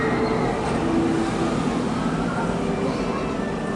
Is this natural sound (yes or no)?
yes